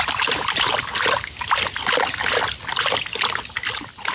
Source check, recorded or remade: recorded